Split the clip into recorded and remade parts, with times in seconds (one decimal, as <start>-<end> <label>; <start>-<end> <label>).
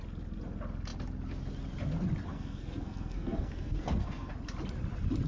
0.0-2.3 recorded; 2.3-4.3 remade; 4.3-5.3 recorded